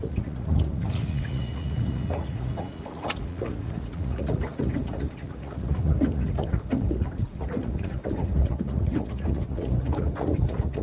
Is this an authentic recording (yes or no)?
no